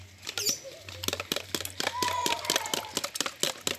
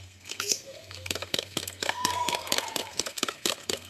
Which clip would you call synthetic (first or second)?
second